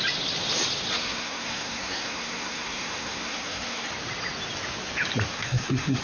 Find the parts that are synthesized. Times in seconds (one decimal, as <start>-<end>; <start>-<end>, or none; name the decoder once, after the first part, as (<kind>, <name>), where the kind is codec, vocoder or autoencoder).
0.9-3.9 (codec, SNAC); 5.3-6.0